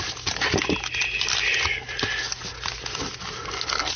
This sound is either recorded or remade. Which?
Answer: recorded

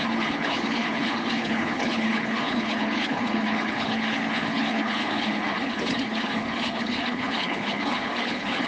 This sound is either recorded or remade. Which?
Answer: remade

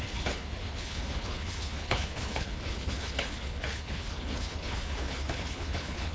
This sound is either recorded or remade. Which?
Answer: remade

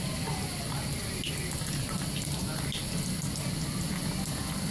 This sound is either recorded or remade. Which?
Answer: recorded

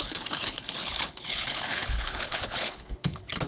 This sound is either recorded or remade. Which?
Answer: remade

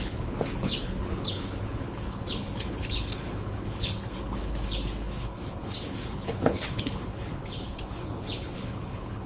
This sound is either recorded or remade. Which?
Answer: remade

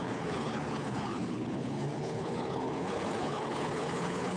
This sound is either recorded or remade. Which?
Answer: remade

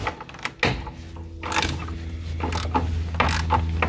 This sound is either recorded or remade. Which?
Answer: recorded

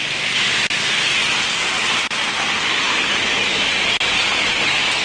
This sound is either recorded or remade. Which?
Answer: recorded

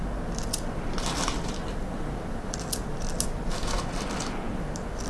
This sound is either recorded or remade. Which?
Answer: recorded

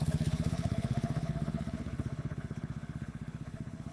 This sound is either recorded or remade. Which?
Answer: remade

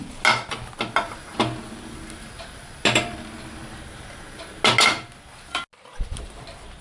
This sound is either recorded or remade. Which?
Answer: recorded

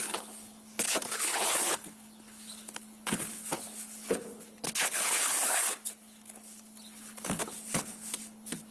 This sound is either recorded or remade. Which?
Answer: remade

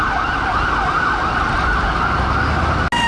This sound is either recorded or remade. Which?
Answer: recorded